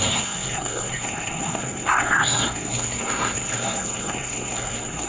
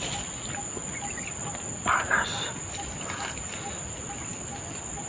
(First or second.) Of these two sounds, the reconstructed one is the first